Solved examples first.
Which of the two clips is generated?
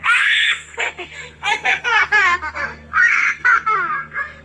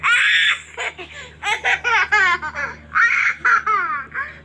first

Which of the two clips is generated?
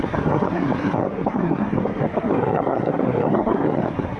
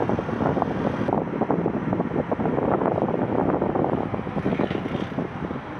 first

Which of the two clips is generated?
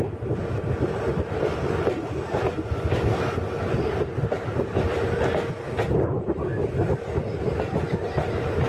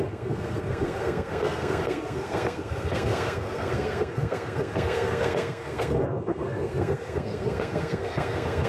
second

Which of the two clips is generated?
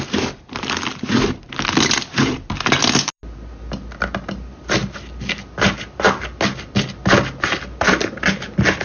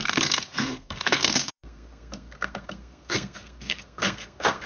second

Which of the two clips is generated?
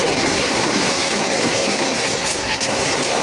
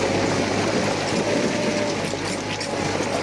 first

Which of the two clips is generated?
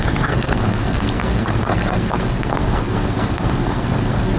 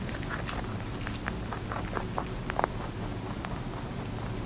first